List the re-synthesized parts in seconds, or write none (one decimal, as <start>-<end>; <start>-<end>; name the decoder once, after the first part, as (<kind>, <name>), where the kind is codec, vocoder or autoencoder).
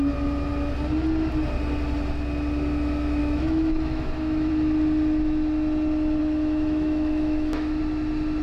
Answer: 3.2-4.5 (autoencoder, DAC-VAE); 6.2-7.8